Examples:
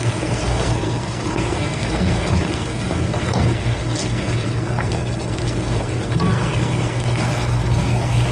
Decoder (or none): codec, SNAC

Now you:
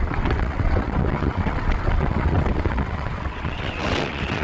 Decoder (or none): vocoder, WaveNeXt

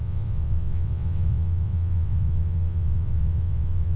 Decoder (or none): vocoder, WaveNeXt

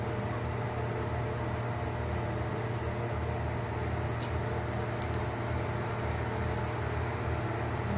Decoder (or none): none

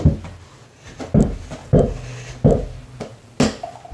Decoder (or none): none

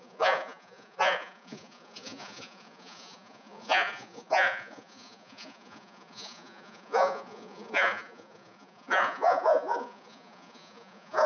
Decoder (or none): vocoder, Vocos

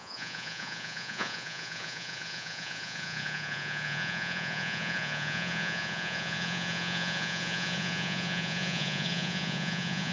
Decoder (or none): vocoder, Vocos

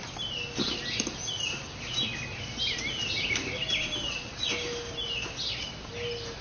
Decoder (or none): none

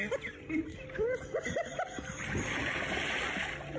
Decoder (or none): none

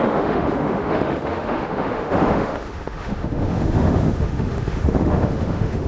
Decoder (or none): autoencoder, DAC-VAE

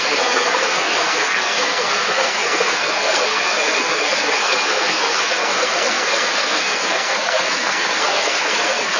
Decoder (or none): codec, SNAC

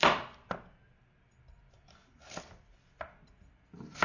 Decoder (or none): none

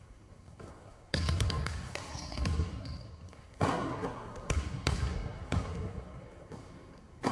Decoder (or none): codec, SNAC